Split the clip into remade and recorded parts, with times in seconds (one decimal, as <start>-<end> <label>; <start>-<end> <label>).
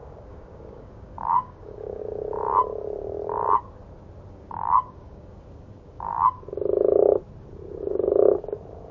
0.0-2.0 remade; 2.0-4.3 recorded; 4.3-6.1 remade; 6.1-8.9 recorded